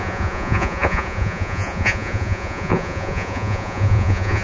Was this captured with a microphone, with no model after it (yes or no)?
no